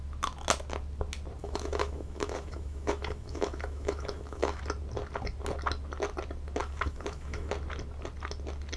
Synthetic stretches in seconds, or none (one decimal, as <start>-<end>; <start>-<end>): 1.4-4.6; 6.6-7.5